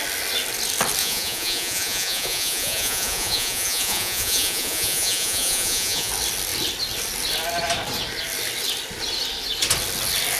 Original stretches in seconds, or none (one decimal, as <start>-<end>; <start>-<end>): 0.0-1.0; 6.1-10.4